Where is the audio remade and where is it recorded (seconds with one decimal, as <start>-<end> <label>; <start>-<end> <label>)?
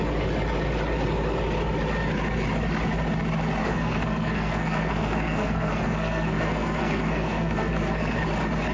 0.0-3.6 recorded; 3.6-8.2 remade; 8.2-8.7 recorded